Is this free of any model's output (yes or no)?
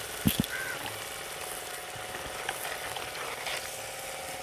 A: yes